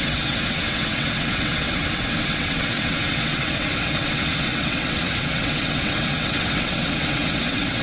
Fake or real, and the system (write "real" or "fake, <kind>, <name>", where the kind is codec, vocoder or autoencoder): fake, vocoder, WaveNeXt